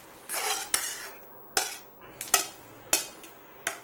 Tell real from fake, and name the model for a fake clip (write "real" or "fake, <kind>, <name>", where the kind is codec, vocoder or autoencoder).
real